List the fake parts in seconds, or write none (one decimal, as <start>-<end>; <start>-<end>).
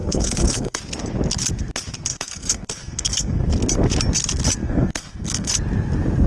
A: 0.0-0.8; 2.1-3.4; 4.6-5.5